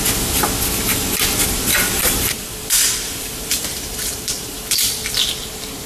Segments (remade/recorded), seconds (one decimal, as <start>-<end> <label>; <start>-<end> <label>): 0.0-1.7 recorded; 1.7-5.2 remade; 5.2-5.9 recorded